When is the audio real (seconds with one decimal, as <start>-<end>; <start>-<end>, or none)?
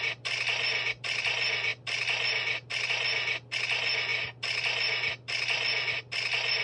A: 0.0-6.6